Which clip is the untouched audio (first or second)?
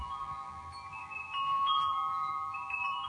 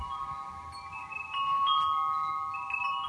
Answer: second